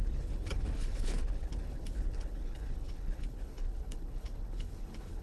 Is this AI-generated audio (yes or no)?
yes